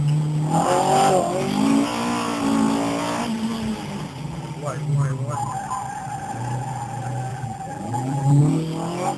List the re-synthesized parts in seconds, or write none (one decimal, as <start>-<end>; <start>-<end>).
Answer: 7.3-8.4

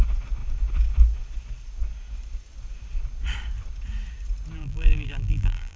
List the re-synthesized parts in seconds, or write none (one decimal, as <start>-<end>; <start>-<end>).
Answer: 4.6-5.8

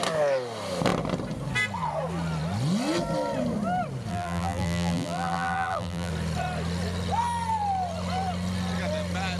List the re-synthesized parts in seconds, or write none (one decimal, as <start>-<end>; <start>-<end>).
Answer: 4.1-6.1

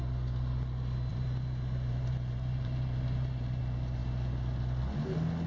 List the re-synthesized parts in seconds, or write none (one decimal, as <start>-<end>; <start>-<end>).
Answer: 1.1-3.6

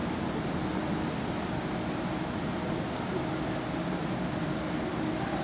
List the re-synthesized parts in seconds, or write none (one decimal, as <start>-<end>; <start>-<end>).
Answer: none